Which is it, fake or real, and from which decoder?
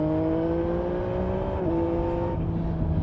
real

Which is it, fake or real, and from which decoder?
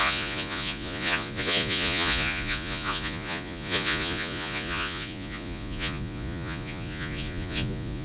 fake, vocoder, Vocos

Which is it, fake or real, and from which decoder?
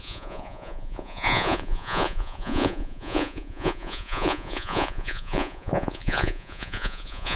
fake, vocoder, Vocos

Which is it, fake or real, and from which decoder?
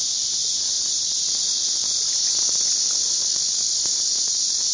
real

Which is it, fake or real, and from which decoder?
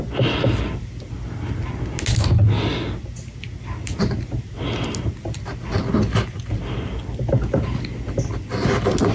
real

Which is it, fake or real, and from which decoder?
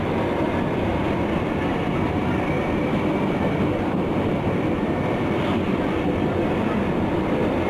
fake, vocoder, BigVGAN v2